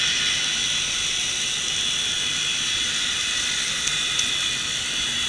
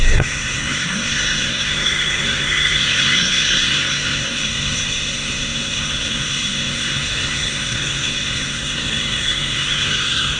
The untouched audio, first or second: first